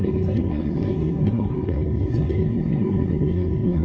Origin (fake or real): fake